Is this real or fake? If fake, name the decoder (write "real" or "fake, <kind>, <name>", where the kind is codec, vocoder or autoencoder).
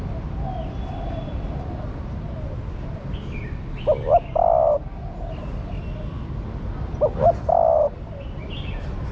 real